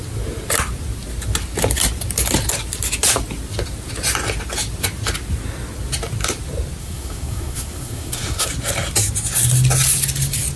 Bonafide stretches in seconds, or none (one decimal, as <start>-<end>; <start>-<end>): 0.0-6.8; 8.5-10.6